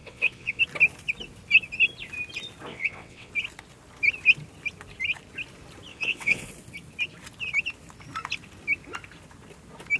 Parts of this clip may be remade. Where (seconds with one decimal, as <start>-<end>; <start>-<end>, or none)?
0.0-0.6; 2.7-3.3; 5.9-6.5